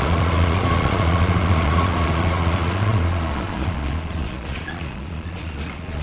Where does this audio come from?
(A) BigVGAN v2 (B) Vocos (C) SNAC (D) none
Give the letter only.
B